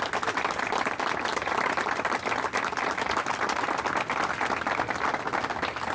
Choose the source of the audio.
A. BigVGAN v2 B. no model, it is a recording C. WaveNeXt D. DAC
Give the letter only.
B